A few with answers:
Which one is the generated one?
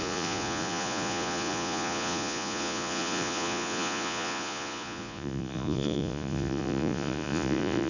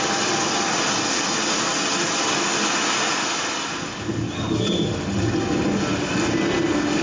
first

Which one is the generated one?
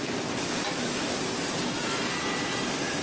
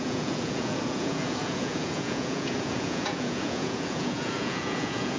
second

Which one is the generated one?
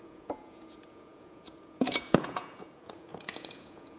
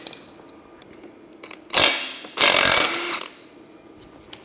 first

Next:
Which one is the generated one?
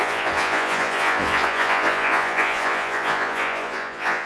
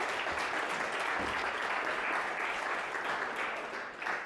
first